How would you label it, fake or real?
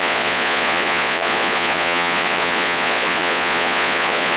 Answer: fake